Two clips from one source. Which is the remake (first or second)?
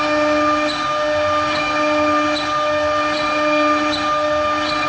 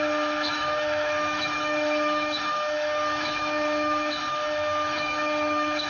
second